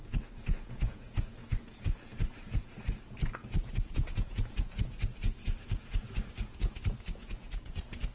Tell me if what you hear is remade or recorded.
remade